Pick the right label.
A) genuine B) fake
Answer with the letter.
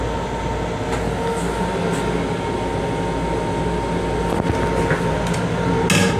A